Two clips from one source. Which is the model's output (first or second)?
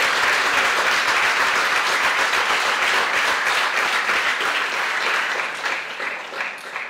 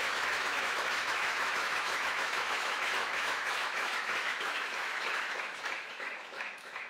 second